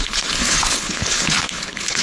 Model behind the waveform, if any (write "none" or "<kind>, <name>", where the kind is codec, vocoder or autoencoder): codec, HILCodec